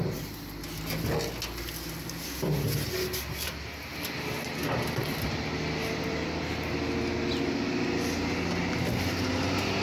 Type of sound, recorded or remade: recorded